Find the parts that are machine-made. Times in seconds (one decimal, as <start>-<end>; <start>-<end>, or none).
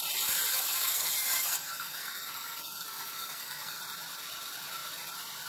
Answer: 0.5-3.8